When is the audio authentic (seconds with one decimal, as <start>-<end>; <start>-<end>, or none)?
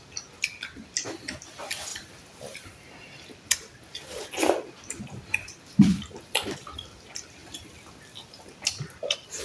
0.0-9.4